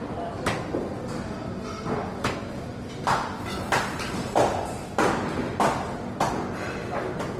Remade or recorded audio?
recorded